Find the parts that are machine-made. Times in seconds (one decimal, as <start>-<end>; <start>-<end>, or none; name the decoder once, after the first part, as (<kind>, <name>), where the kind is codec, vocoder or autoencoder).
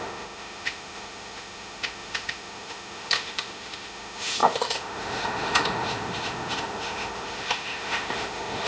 0.0-8.7 (autoencoder, DAC-VAE)